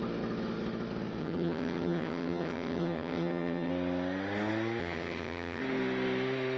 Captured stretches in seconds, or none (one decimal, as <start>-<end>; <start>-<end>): 0.0-1.2; 3.7-4.8; 5.6-6.6